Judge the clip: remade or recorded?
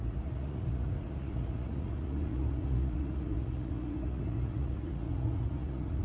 remade